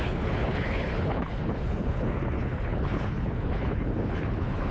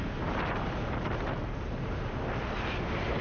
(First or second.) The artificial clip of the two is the first